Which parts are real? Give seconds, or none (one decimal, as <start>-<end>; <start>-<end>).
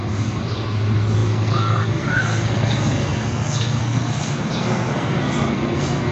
none